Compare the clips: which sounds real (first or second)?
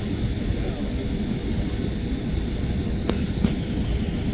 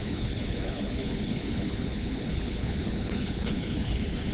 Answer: first